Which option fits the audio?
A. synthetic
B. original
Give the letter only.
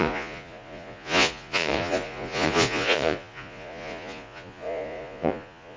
A